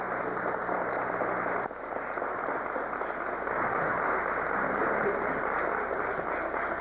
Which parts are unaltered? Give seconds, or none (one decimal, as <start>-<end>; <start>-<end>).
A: 0.0-6.8